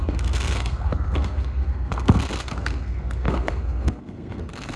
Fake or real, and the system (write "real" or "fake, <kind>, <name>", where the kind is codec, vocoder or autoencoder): fake, codec, SNAC